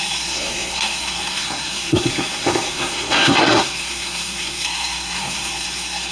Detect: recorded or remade remade